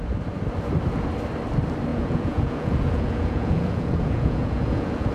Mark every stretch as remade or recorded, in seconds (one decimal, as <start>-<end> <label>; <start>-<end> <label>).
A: 0.0-1.9 recorded; 1.9-5.1 remade